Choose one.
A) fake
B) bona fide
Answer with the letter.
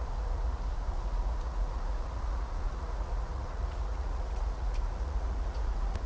A